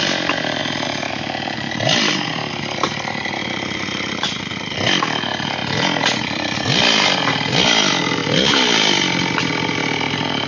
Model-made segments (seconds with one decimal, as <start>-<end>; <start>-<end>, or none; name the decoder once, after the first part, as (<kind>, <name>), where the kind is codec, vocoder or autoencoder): 0.0-0.6 (vocoder, BigVGAN v2); 2.0-5.6; 6.2-10.5